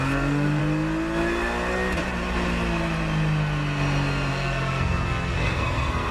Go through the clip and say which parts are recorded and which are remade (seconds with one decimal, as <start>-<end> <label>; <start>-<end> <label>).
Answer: 0.0-0.6 remade; 0.6-4.3 recorded; 4.3-6.1 remade